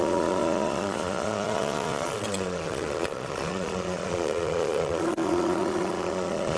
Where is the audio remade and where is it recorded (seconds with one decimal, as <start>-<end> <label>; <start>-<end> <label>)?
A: 0.0-6.6 remade

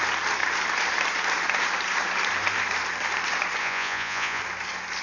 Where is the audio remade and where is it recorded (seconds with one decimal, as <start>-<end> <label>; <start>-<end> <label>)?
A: 0.0-3.6 recorded; 3.6-4.4 remade; 4.4-5.0 recorded